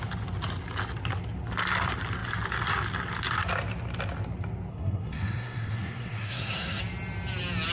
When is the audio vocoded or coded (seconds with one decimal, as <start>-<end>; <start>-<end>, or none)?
4.7-6.8